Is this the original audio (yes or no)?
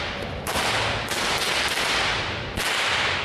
yes